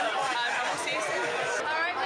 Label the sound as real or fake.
real